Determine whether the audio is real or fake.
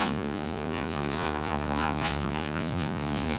fake